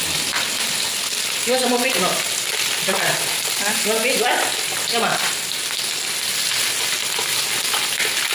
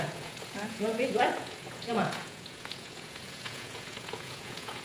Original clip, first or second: first